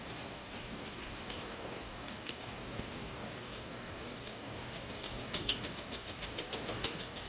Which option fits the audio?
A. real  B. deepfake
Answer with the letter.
B